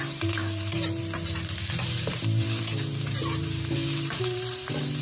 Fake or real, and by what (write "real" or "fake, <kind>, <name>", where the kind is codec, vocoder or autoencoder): fake, vocoder, BigVGAN v2